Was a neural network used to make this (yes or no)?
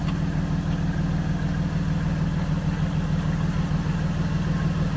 no